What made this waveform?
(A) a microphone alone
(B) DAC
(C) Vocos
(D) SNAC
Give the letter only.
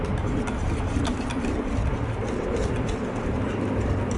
A